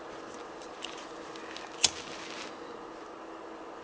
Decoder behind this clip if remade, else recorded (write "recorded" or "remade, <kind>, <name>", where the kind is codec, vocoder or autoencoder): recorded